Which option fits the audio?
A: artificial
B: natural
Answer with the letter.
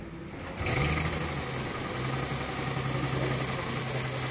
B